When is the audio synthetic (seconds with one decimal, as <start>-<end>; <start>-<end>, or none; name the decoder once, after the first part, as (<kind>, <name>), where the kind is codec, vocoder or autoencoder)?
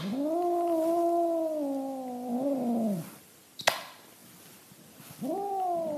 none